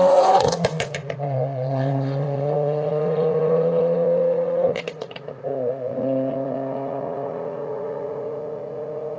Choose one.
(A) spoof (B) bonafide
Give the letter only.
A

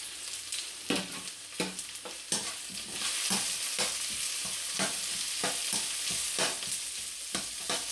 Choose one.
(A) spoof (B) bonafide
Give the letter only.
B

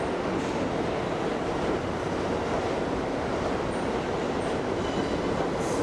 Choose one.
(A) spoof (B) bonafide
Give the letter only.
B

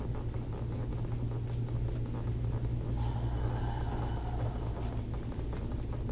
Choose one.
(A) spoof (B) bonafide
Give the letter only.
B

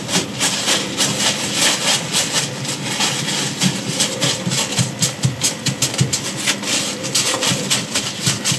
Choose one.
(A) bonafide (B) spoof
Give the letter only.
A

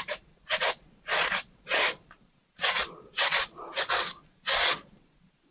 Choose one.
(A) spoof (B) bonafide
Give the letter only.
A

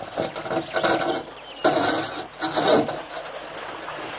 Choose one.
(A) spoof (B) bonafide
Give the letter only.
B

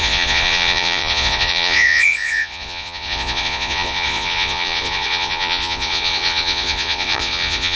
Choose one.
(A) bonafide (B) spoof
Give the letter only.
B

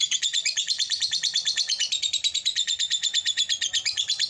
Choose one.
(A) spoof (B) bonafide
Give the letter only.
A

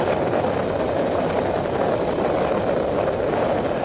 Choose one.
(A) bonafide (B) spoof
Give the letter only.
A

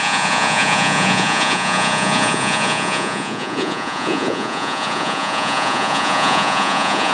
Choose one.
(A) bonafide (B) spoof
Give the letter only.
B